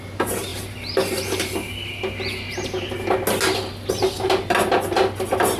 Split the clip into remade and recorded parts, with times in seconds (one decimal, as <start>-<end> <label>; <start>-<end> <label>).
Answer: 0.0-5.6 recorded